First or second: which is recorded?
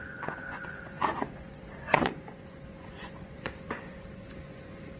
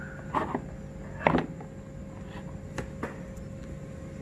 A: second